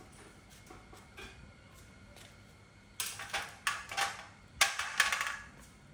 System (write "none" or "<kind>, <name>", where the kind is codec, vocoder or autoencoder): none